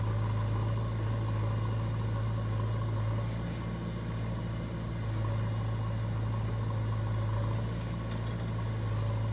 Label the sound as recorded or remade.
recorded